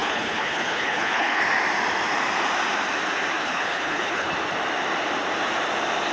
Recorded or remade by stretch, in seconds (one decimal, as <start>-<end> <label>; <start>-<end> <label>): 0.0-1.4 remade; 1.4-3.4 recorded; 3.4-4.3 remade; 4.3-6.1 recorded